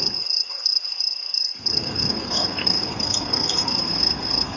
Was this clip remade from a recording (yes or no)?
yes